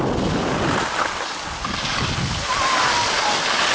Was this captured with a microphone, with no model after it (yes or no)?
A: yes